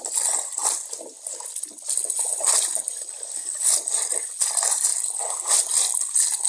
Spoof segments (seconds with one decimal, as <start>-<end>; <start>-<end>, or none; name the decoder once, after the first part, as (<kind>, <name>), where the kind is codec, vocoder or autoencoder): none

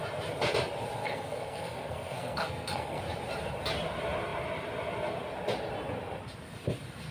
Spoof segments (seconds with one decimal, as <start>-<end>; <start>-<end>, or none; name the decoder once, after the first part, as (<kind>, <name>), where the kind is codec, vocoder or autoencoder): 1.0-3.0 (codec, SNAC)